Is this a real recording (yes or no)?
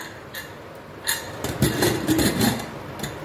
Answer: no